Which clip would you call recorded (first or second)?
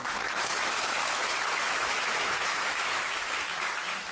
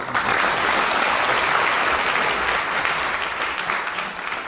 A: second